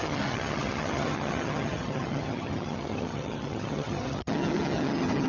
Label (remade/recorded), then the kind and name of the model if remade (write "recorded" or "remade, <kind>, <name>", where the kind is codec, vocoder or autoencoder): remade, vocoder, HiFi-GAN